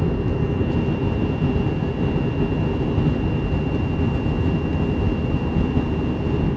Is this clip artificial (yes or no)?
no